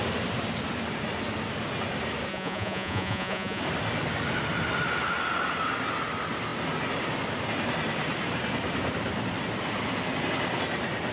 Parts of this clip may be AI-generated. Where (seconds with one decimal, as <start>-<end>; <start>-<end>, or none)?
2.3-3.6